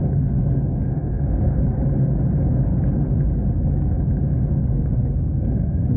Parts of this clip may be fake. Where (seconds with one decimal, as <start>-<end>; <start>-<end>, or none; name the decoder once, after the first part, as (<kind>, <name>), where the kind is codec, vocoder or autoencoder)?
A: 0.0-1.6 (codec, SNAC); 4.7-6.0